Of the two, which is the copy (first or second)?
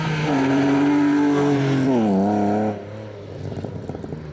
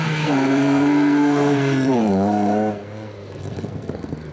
second